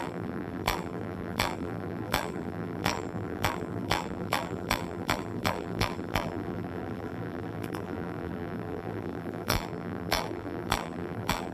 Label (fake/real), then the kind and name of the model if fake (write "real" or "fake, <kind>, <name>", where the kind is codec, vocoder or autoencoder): fake, vocoder, BigVGAN v2